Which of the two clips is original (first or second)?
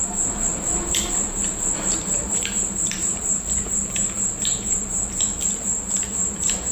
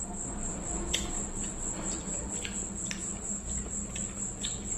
second